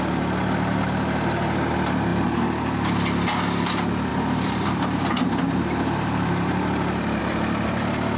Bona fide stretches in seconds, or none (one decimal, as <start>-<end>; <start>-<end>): 0.0-4.1; 7.2-8.2